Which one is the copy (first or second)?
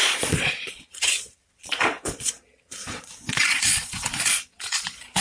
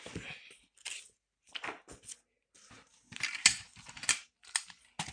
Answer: first